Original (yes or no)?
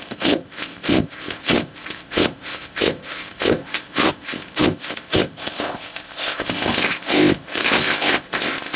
no